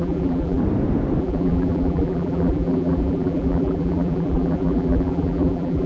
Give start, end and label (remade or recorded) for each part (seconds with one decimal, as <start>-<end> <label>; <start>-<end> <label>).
0.0-0.6 remade; 0.6-1.2 recorded; 1.2-5.9 remade